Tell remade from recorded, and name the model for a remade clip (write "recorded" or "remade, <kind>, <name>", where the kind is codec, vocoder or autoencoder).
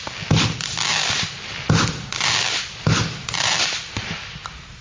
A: recorded